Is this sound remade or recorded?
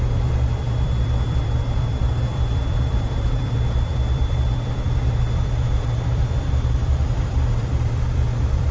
remade